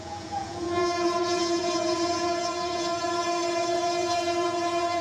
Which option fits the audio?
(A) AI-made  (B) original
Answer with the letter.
A